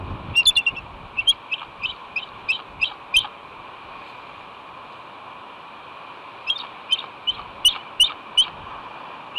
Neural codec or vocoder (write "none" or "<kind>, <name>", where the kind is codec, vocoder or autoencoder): none